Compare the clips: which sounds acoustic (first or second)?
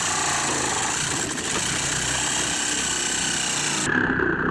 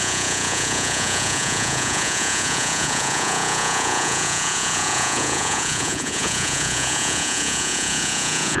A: first